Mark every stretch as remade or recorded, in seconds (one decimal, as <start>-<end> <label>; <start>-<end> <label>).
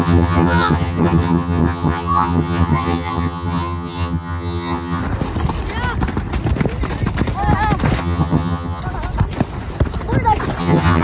0.0-5.0 remade; 5.0-8.0 recorded; 8.0-8.8 remade; 8.8-10.6 recorded; 10.6-11.0 remade